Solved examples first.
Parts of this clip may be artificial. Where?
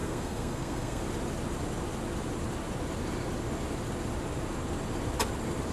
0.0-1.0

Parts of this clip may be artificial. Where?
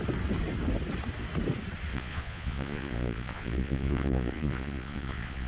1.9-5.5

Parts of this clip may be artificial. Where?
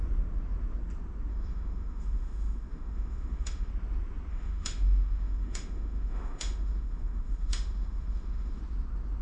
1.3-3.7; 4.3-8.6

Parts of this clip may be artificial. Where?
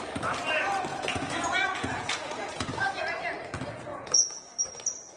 0.9-3.0; 3.9-4.5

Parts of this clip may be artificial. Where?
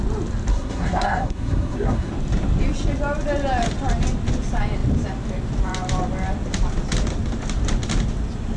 0.5-2.1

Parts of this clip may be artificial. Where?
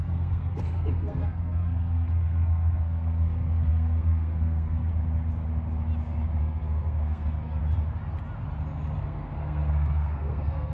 0.0-4.9; 6.4-7.6; 9.0-10.7